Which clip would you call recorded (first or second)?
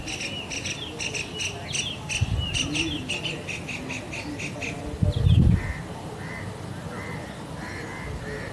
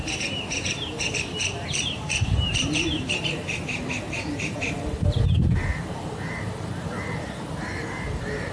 first